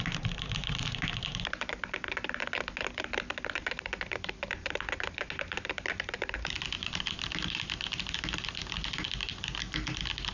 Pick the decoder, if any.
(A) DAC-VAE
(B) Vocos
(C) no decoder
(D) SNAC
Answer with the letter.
C